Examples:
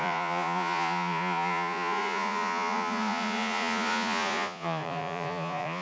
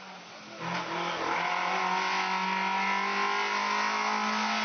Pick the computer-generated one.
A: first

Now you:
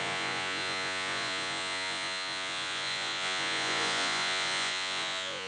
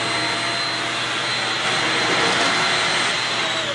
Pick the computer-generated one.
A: first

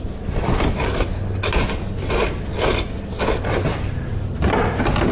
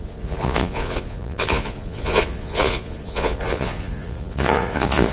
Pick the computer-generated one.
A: second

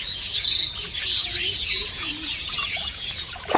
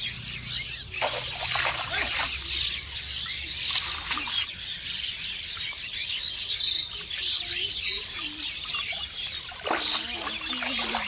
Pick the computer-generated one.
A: first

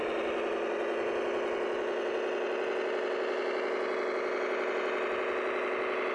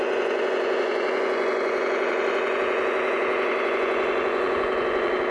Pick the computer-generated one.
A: second